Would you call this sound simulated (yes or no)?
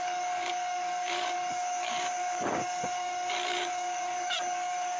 yes